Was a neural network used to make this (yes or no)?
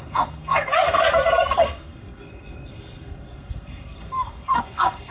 yes